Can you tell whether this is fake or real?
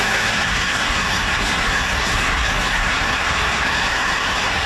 fake